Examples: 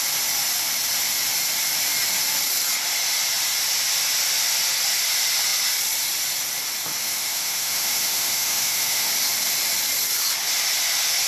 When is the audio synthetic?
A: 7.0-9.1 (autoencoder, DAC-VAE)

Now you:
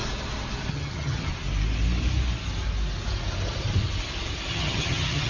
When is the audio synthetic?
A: 0.7-1.3 (vocoder, HiFi-GAN); 4.5-5.3

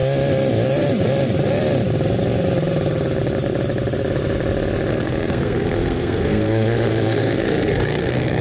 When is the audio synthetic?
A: 4.9-8.4 (codec, SNAC)

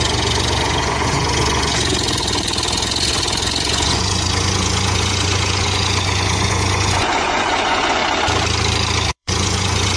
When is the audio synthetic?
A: 0.0-8.0 (vocoder, Vocos); 9.1-10.0